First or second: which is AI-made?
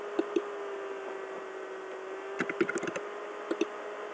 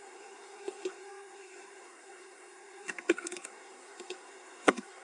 second